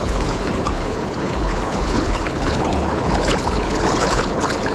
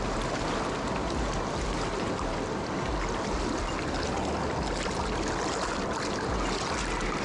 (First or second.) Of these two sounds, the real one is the second